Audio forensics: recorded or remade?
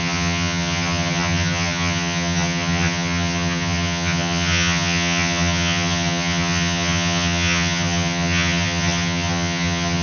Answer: remade